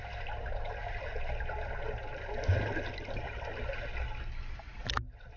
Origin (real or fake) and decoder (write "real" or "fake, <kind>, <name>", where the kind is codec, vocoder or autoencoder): real